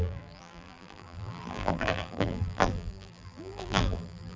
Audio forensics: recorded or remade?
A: remade